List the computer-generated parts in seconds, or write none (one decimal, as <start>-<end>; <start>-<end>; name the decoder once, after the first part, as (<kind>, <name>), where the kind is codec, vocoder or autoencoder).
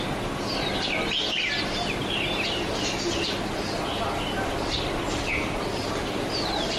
none